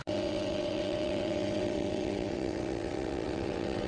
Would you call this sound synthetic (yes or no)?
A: yes